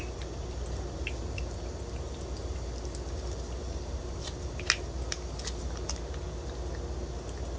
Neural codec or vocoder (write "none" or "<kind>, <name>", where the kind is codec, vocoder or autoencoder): none